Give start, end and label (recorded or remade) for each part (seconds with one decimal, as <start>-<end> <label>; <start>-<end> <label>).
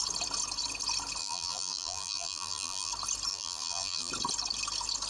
0.0-1.2 recorded; 1.2-2.9 remade; 2.9-3.3 recorded; 3.3-4.1 remade; 4.1-5.1 recorded